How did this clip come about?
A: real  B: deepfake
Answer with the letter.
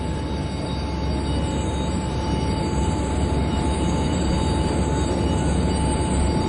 A